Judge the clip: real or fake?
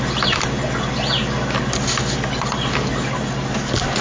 real